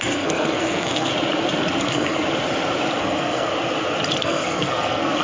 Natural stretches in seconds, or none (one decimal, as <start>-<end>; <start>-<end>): 1.1-1.8; 2.2-3.0; 3.5-4.2